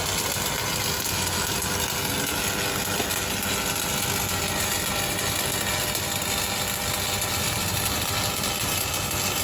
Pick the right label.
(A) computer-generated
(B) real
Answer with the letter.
B